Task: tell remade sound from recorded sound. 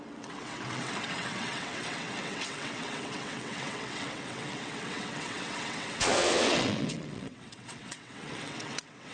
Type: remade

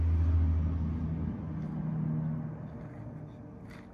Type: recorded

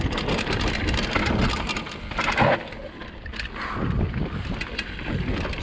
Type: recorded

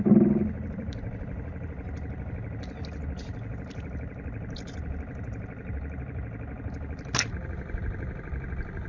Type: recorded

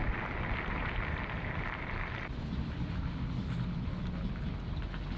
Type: recorded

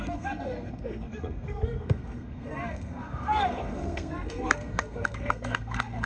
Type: remade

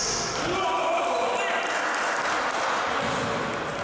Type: recorded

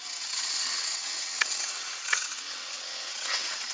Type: remade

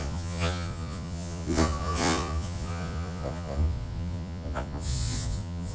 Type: remade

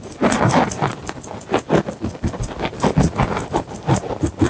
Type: recorded